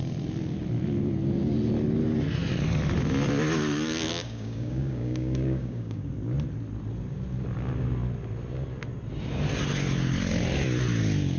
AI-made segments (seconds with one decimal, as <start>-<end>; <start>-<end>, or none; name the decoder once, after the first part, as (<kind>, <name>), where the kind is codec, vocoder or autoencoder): 4.1-6.1 (codec, DAC)